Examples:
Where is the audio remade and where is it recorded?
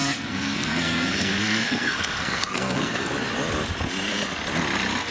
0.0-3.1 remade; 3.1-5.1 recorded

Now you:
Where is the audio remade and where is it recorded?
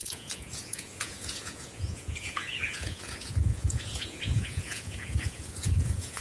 0.0-6.2 remade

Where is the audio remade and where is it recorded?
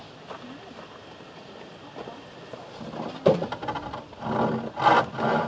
0.0-5.5 recorded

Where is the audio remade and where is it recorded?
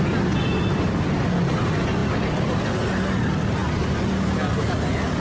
0.0-5.2 recorded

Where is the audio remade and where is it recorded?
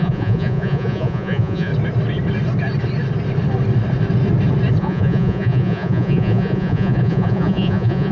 0.0-1.7 remade; 1.7-4.8 recorded; 4.8-8.1 remade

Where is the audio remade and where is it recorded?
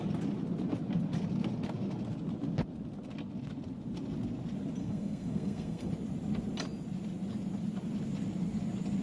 0.0-4.8 recorded; 4.8-5.9 remade; 5.9-9.0 recorded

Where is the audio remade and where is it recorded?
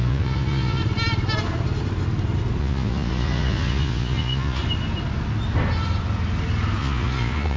0.0-0.8 remade; 0.8-2.6 recorded; 2.6-4.6 remade; 4.6-6.8 recorded; 6.8-7.6 remade